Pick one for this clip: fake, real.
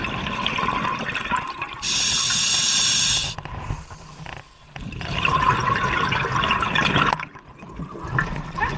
real